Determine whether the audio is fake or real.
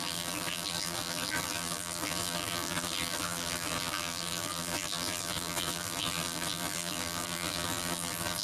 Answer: fake